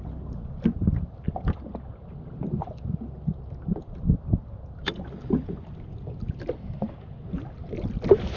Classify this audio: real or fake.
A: real